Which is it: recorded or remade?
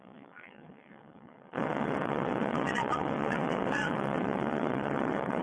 remade